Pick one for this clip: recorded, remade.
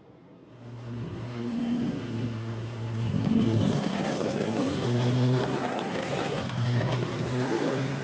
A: remade